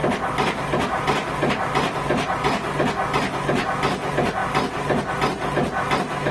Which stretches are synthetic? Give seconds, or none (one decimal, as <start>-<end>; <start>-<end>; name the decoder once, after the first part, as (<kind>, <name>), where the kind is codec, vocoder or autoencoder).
none